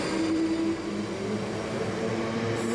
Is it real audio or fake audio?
real